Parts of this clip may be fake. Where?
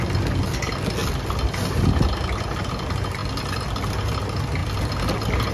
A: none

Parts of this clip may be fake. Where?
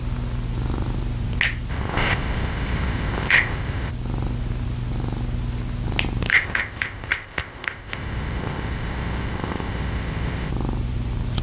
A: 1.7-3.9 (codec, ZipCodec); 6.3-10.5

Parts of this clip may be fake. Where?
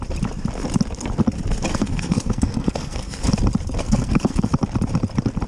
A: 1.7-3.3 (codec, SNAC); 3.8-4.5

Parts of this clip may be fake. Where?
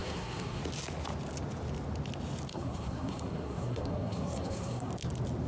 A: 0.0-0.6 (codec, SNAC); 2.5-4.9